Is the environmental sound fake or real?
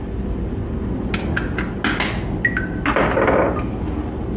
real